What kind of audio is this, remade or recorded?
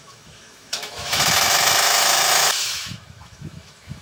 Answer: remade